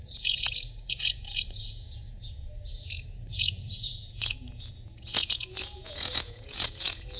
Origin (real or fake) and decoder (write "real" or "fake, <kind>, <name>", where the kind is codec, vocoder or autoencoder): fake, vocoder, Vocos